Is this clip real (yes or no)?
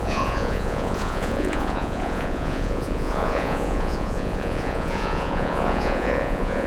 no